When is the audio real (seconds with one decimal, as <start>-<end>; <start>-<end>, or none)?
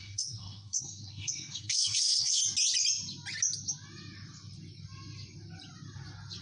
2.4-6.4